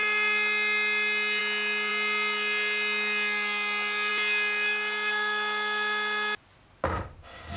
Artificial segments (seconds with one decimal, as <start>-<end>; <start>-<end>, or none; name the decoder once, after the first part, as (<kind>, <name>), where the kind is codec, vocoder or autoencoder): none